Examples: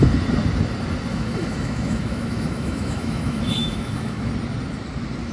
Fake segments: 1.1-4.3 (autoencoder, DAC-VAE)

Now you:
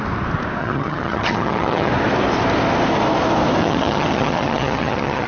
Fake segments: 0.6-1.9 (vocoder, HiFi-GAN); 3.6-5.3

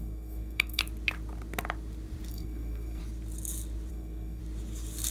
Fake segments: 0.0-0.8 (codec, SNAC); 2.3-3.0; 3.9-4.4

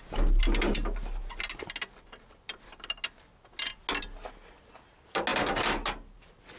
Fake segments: none

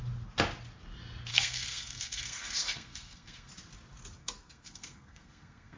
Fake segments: 1.3-3.5 (codec, SNAC); 4.2-5.8